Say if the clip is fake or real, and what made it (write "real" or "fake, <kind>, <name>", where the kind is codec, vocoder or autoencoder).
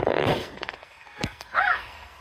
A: fake, codec, SNAC